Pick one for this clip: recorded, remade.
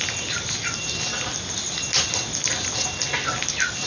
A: recorded